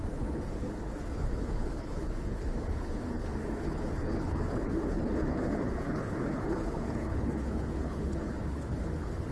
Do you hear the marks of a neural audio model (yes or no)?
yes